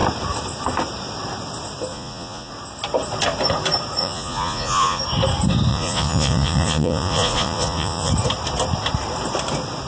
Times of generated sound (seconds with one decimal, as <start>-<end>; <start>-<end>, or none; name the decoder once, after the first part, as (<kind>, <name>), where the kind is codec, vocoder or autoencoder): 1.9-2.5 (vocoder, Vocos); 4.0-5.0; 5.7-8.1